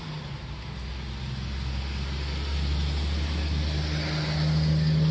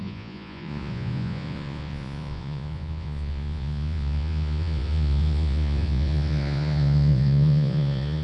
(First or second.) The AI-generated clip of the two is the second